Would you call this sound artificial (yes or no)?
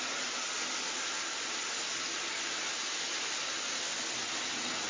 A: no